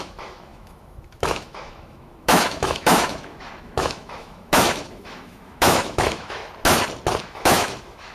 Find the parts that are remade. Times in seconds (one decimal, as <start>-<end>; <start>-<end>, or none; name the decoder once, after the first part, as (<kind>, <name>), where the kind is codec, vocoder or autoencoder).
0.0-6.4 (autoencoder, DAC-VAE); 7.2-8.1

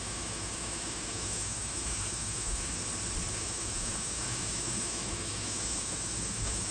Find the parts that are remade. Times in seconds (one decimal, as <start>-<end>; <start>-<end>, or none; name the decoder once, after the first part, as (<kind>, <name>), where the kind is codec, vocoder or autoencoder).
0.0-2.8 (autoencoder, DAC-VAE); 3.3-6.7